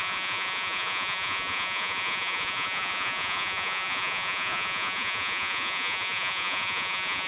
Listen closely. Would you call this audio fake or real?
fake